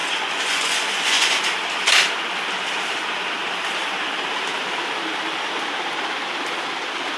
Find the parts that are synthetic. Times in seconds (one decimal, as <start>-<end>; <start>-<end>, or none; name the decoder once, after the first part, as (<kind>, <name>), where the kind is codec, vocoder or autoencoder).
0.0-1.4 (vocoder, Vocos)